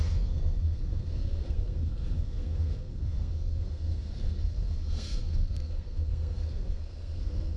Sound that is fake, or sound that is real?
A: fake